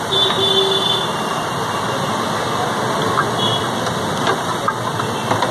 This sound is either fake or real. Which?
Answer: real